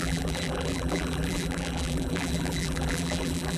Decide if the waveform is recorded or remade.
remade